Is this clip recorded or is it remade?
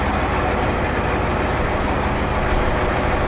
recorded